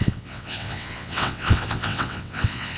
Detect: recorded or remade remade